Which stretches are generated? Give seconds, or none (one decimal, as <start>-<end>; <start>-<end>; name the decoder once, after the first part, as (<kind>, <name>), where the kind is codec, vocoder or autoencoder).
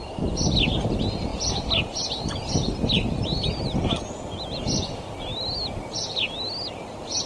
none